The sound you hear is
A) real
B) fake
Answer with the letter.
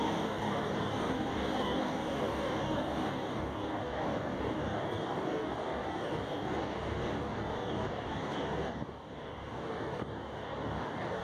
B